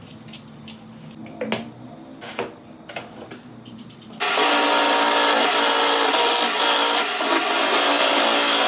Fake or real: real